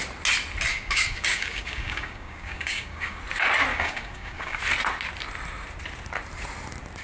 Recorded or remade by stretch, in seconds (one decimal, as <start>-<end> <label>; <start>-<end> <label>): 0.0-0.7 recorded; 0.7-3.2 remade; 3.2-3.7 recorded; 3.7-4.6 remade; 4.6-7.0 recorded